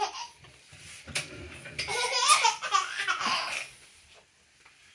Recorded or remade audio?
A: recorded